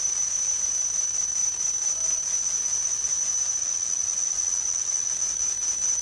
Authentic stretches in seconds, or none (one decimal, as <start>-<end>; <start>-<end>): 0.0-3.6; 5.1-6.0